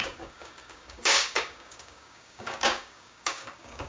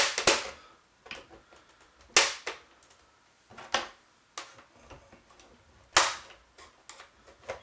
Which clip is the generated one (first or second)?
first